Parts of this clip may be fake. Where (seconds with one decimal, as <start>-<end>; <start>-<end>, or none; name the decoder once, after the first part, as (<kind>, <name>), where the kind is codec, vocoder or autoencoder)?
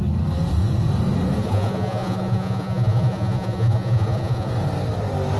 1.4-4.5 (vocoder, Vocos)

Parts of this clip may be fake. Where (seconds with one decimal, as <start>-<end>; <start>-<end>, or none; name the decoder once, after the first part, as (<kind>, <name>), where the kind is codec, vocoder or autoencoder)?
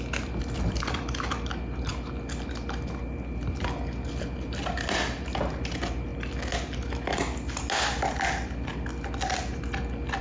none